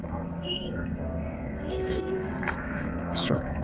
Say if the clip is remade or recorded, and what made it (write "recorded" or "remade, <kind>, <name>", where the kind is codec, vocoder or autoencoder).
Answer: remade, codec, SNAC